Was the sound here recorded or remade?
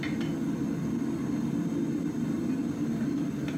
recorded